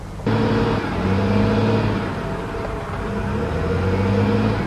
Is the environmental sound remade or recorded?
recorded